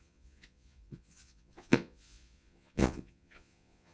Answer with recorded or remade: remade